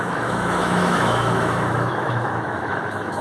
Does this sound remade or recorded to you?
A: remade